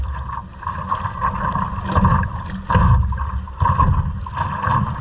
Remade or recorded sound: recorded